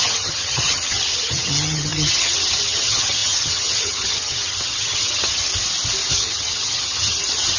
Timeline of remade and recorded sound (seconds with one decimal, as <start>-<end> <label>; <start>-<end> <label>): 0.0-5.5 remade; 5.5-6.1 recorded; 6.1-7.6 remade